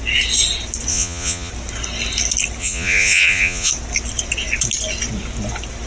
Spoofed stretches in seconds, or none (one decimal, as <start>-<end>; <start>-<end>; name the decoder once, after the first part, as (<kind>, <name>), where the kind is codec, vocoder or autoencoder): 0.9-1.5 (vocoder, Vocos); 2.6-3.7